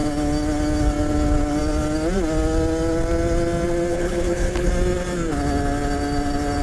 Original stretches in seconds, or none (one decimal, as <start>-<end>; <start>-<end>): 0.0-3.9; 4.7-6.6